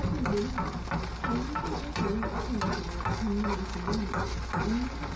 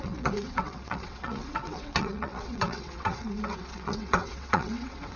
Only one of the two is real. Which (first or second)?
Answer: first